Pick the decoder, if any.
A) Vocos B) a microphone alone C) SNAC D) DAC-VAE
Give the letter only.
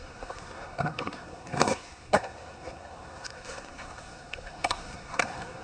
C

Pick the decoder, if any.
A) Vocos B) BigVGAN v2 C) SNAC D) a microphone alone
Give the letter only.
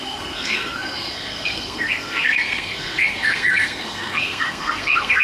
C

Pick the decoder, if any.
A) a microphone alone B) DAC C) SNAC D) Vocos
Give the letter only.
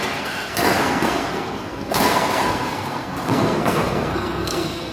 C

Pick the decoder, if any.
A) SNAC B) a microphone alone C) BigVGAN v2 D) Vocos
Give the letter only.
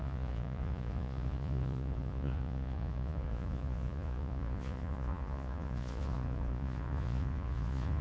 D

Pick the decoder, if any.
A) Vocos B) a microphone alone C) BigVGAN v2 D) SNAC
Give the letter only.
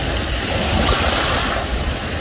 B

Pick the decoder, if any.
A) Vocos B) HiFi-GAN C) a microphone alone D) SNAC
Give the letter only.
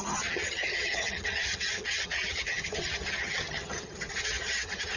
B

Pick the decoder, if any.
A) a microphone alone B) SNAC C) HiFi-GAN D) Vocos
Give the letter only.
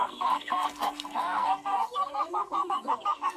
B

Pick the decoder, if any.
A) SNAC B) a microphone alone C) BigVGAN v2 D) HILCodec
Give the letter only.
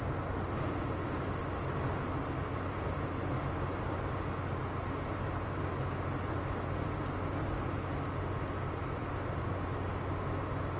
B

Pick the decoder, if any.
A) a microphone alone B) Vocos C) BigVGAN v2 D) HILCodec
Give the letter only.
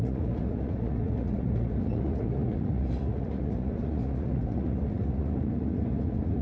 B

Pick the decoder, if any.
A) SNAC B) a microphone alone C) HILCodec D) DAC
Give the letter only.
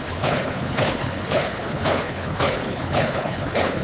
C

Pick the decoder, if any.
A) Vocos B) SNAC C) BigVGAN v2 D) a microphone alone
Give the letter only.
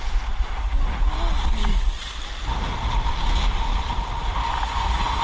D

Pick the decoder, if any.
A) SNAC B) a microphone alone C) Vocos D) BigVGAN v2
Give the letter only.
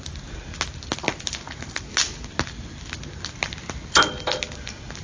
B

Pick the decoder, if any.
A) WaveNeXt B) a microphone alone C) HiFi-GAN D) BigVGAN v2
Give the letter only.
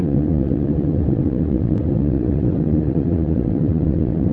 A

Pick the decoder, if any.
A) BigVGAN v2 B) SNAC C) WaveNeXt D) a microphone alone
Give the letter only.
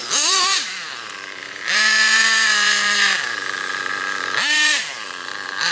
A